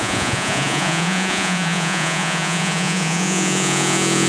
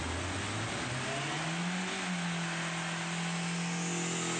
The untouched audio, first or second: second